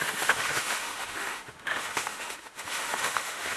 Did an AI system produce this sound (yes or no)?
yes